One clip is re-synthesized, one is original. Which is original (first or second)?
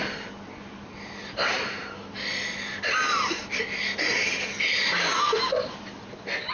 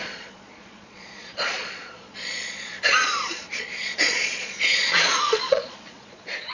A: first